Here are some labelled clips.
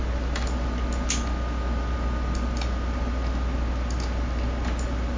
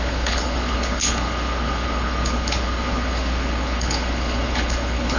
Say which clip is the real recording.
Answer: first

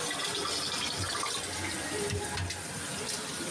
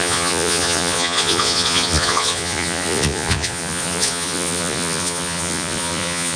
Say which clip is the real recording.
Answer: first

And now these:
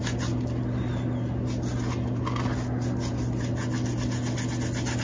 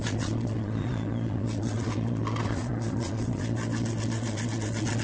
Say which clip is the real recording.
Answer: first